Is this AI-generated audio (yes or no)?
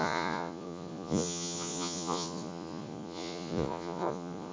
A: yes